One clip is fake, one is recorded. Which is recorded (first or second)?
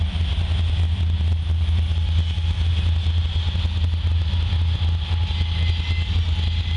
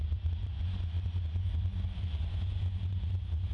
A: first